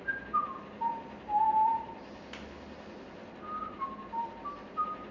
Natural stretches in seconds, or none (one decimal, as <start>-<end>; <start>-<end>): 0.0-5.1